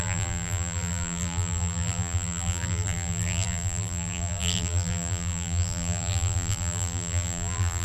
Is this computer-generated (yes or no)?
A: yes